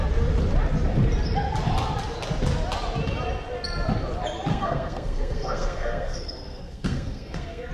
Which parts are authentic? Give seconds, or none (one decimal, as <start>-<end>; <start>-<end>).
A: 0.0-4.5